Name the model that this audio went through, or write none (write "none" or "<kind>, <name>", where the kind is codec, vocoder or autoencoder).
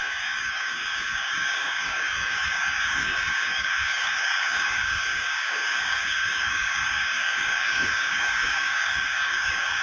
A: codec, DAC